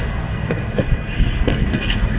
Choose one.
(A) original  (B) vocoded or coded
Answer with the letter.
B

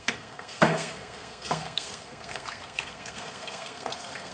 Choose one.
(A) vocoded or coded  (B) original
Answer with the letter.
A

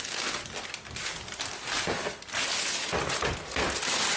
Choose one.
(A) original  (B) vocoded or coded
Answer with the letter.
A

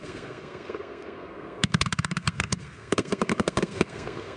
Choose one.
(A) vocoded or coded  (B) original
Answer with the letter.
A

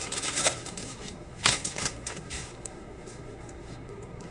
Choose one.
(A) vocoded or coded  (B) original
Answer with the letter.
A